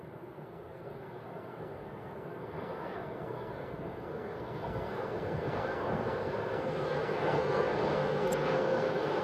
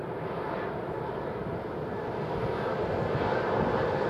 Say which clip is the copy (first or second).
first